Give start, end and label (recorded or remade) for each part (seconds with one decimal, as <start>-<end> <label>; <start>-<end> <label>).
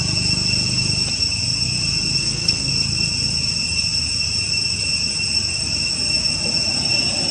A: 0.0-2.2 recorded; 2.2-2.7 remade; 2.7-7.3 recorded